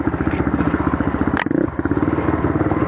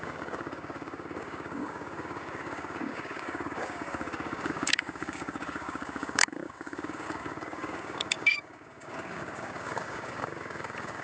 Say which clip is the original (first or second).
first